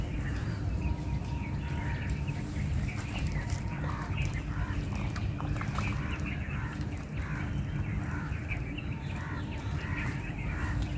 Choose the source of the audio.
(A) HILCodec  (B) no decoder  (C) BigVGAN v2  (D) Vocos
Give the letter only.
C